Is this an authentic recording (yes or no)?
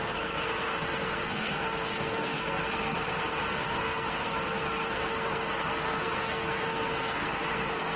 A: no